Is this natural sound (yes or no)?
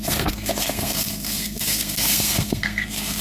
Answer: no